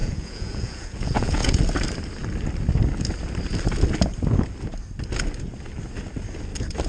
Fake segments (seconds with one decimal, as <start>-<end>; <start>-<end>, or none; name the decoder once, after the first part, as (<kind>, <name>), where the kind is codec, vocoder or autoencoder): 0.0-1.6 (vocoder, Vocos)